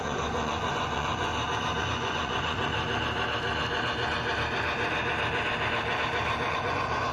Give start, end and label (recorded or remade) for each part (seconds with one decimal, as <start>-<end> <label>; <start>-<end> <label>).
0.0-1.3 remade; 1.3-1.8 recorded; 1.8-2.7 remade; 2.7-6.5 recorded; 6.5-7.1 remade